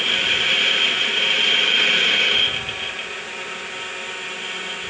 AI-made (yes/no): no